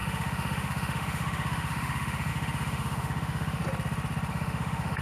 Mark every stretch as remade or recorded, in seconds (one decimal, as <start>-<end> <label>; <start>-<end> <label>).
0.0-3.6 remade; 3.6-4.3 recorded; 4.3-5.0 remade